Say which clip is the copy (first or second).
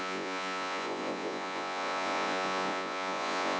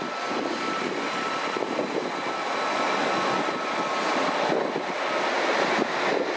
first